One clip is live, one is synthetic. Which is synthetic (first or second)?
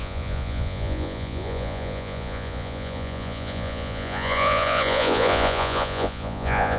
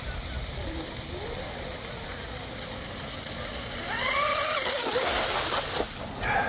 first